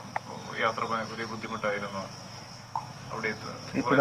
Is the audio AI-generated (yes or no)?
yes